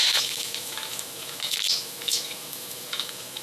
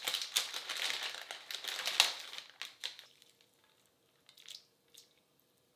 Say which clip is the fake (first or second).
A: first